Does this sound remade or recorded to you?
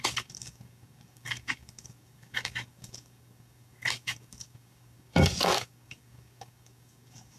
remade